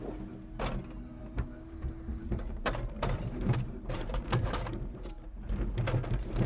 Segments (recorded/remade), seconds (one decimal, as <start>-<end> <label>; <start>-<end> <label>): 0.0-1.2 recorded; 1.2-5.1 remade; 5.1-6.5 recorded